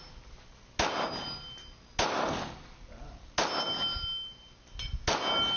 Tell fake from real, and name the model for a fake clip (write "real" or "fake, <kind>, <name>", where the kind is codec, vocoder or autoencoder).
real